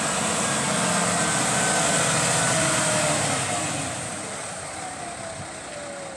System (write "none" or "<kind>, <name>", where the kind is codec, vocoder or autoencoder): none